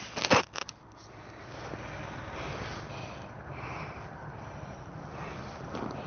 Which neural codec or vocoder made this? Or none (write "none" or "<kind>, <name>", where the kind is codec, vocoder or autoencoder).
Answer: none